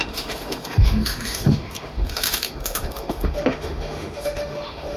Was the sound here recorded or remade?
remade